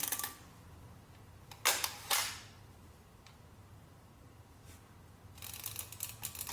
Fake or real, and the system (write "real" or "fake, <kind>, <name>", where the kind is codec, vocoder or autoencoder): real